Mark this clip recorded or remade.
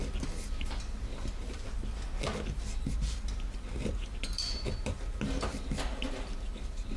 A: recorded